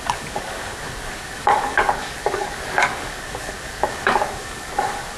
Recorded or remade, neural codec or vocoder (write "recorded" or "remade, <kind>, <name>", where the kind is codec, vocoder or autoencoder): remade, codec, DAC